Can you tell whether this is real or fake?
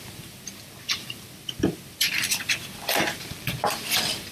real